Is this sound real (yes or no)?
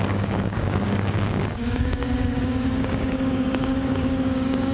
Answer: no